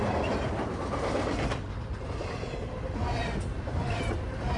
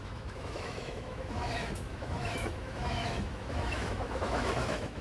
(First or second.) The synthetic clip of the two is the second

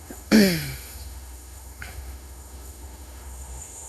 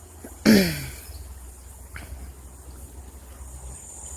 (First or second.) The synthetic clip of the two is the first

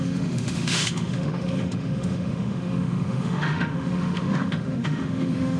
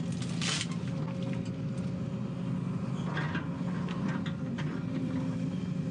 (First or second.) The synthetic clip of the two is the first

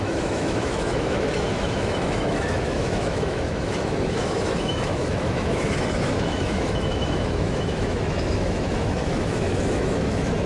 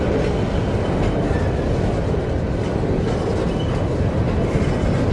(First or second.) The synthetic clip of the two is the first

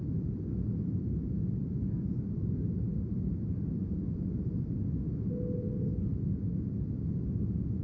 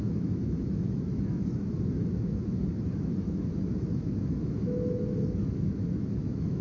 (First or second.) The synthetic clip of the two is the second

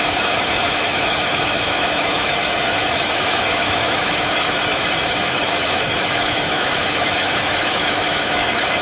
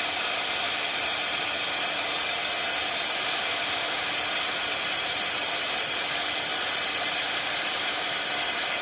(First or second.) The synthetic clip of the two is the first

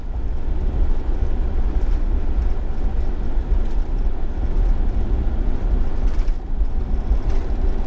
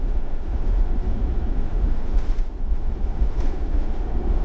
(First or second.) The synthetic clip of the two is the second